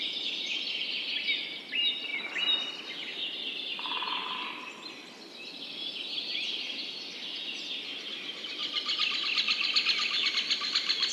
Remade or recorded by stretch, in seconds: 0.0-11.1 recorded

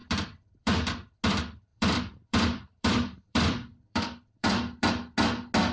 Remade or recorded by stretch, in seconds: 0.0-1.2 remade; 1.2-1.7 recorded; 1.7-4.9 remade; 4.9-5.7 recorded

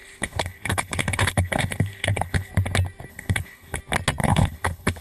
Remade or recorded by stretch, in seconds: 0.0-2.5 remade; 2.5-3.1 recorded; 3.1-3.8 remade; 3.8-4.2 recorded; 4.2-5.0 remade